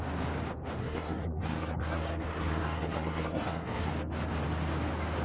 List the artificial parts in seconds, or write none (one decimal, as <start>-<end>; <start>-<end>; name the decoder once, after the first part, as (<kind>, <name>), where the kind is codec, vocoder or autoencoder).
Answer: 0.8-3.9 (codec, SNAC)